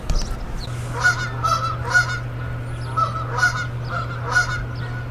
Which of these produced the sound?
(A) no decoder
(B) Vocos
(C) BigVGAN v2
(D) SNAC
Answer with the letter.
A